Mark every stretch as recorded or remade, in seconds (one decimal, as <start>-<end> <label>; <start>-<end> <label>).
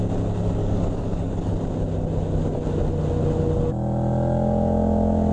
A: 0.0-0.6 recorded; 0.6-1.5 remade; 1.5-5.3 recorded